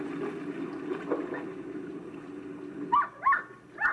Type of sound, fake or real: real